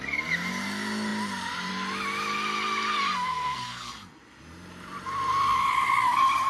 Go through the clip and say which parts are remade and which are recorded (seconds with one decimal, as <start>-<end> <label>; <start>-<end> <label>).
0.0-3.1 recorded; 3.1-3.9 remade; 3.9-6.5 recorded